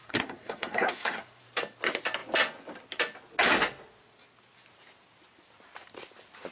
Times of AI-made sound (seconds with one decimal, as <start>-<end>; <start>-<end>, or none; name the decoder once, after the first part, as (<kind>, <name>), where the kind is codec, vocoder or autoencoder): 0.0-1.4 (codec, SNAC)